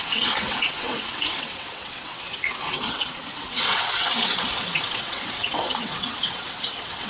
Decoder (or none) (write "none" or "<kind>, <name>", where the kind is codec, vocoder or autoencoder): vocoder, WaveNeXt